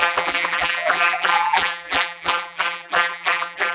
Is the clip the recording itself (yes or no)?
no